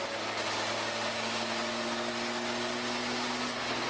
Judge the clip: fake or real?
real